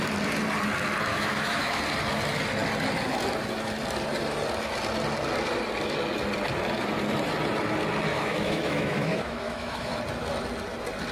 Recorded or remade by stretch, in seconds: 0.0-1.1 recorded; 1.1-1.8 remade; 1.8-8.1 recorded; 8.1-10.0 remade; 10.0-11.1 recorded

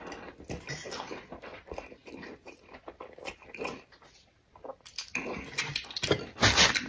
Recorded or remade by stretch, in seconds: 0.0-6.9 recorded